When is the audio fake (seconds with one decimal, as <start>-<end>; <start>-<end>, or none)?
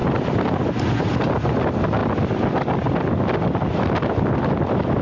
none